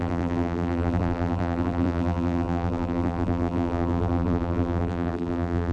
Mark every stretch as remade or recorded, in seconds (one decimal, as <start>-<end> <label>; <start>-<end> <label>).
0.0-5.7 remade